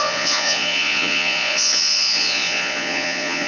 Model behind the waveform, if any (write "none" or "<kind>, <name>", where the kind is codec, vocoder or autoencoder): vocoder, Vocos